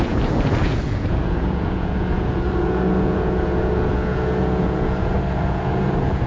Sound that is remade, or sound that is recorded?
remade